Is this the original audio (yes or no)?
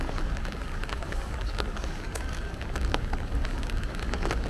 no